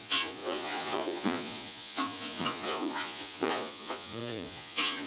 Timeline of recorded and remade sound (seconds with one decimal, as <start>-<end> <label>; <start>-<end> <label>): 0.0-5.1 remade

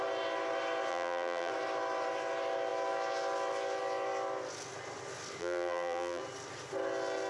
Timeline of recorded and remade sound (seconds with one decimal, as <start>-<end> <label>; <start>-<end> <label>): 0.0-0.9 recorded; 0.9-1.5 remade; 1.5-5.4 recorded; 5.4-6.2 remade; 6.2-7.3 recorded